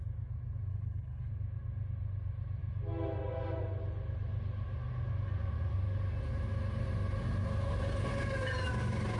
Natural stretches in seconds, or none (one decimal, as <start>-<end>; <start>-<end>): 0.0-0.7; 1.3-9.2